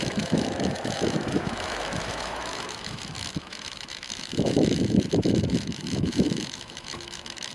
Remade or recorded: remade